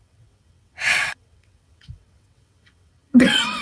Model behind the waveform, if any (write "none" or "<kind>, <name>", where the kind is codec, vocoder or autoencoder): vocoder, WaveNeXt